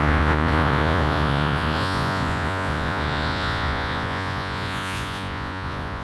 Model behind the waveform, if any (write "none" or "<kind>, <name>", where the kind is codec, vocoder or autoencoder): vocoder, Vocos